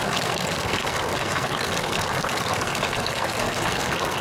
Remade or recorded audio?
remade